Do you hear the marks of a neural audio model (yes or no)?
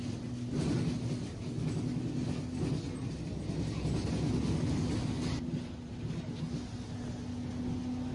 no